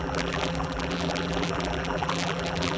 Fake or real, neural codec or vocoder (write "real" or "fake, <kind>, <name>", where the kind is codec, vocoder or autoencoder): fake, vocoder, BigVGAN v2